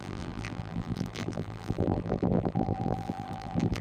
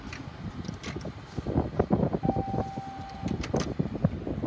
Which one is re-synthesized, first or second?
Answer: first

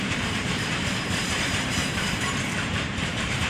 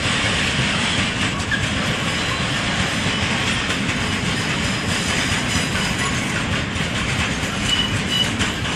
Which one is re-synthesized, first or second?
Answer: first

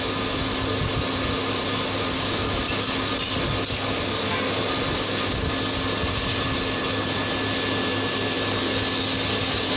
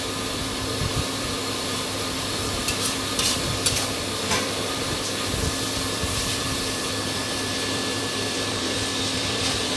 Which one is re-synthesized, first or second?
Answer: second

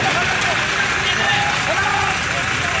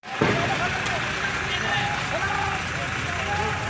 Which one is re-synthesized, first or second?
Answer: first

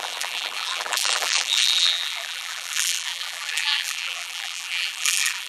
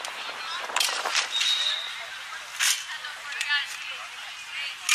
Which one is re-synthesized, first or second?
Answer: first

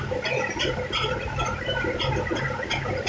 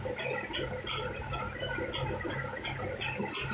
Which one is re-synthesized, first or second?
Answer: first